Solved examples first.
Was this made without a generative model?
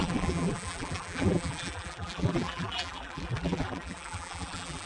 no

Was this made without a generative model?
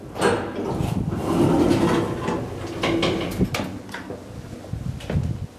yes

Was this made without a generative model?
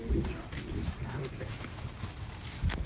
yes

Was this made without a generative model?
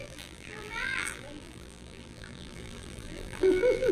no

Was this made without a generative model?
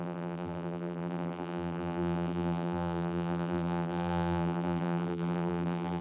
no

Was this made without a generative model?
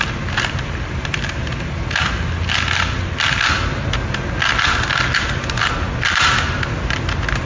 yes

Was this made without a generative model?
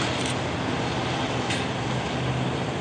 yes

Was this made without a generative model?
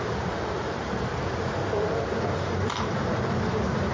no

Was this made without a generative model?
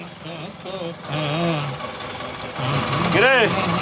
yes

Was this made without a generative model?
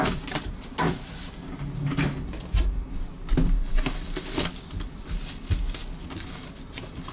yes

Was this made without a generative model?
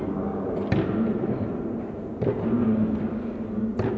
yes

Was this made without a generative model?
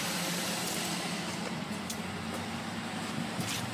no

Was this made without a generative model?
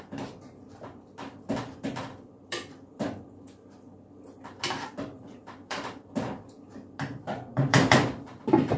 no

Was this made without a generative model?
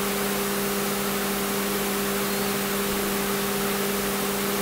yes